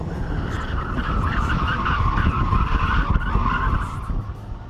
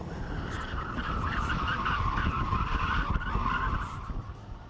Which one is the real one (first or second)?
first